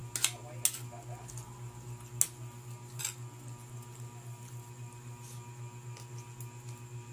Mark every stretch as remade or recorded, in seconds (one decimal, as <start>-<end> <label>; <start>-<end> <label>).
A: 0.0-7.1 recorded